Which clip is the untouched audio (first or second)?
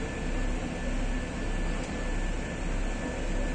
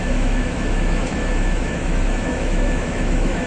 first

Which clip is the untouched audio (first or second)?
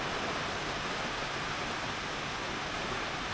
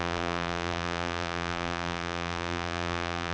first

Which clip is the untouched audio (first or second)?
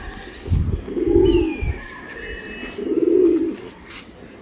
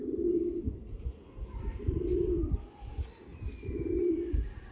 first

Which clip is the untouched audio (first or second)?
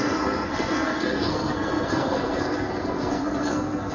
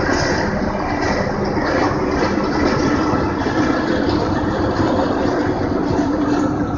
second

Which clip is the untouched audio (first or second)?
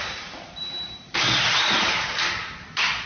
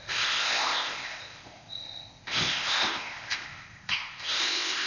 first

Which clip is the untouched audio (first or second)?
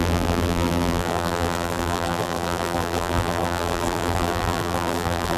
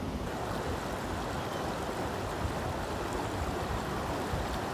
second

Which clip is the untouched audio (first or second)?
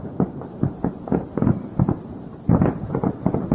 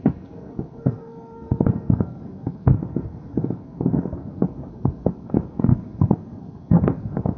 first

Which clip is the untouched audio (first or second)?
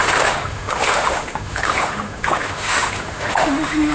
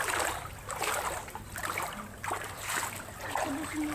second